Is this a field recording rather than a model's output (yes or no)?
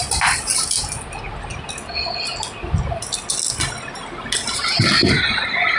yes